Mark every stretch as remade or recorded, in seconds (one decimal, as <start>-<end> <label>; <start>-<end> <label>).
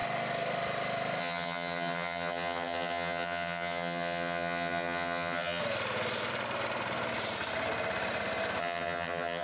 0.0-1.2 recorded; 1.2-5.6 remade; 5.6-8.6 recorded; 8.6-9.4 remade